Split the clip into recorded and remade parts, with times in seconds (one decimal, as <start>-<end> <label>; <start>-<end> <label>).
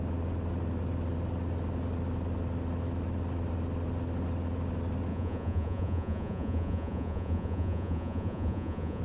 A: 0.0-5.1 recorded; 5.1-9.0 remade